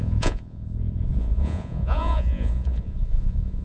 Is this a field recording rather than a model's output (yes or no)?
no